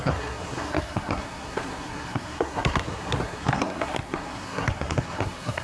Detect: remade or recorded remade